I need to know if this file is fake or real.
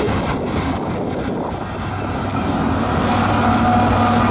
real